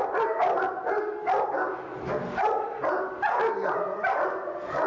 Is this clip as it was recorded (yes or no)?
yes